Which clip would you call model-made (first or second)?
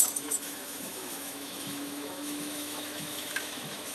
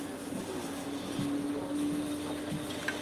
first